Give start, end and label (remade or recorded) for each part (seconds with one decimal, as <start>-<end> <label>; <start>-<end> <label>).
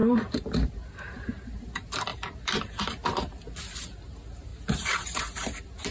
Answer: 0.0-0.7 remade; 0.7-2.1 recorded; 2.1-2.9 remade; 2.9-4.5 recorded; 4.5-5.2 remade; 5.2-5.9 recorded